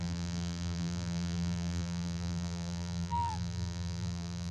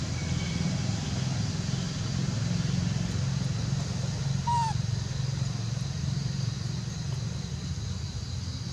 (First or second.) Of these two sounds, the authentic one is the second